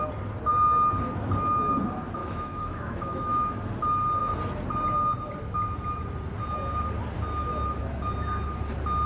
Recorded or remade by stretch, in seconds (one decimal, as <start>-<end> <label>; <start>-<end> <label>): 0.0-2.2 recorded; 2.2-3.6 remade; 3.6-9.1 recorded